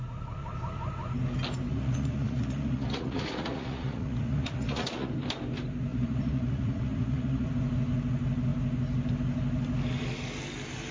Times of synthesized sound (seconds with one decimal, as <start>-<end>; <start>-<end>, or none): 1.7-5.1; 5.9-7.5